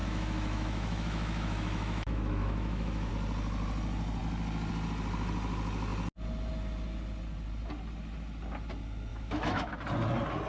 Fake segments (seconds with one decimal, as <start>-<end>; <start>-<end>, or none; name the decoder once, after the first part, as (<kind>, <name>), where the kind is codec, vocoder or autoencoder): 0.0-3.1 (autoencoder, DAC-VAE); 9.1-9.7